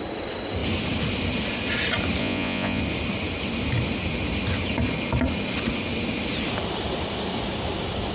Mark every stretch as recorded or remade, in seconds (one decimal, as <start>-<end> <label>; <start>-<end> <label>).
0.0-2.2 recorded; 2.2-2.8 remade; 2.8-8.1 recorded